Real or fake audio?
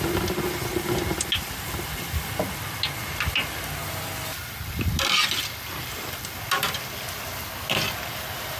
real